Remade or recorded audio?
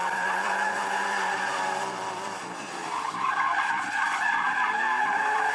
remade